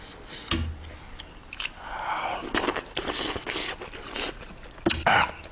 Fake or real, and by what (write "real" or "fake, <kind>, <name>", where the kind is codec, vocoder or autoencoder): real